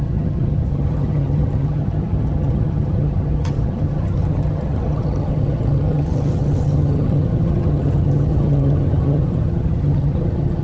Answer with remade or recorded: remade